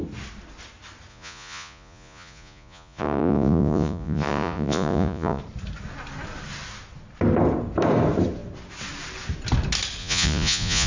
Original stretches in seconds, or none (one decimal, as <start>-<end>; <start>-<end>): 0.0-1.1; 5.4-10.0